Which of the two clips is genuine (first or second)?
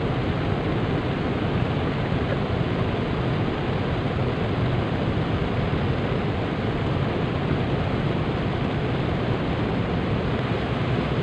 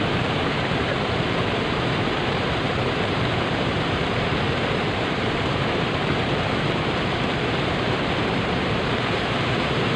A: first